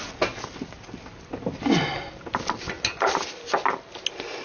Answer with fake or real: real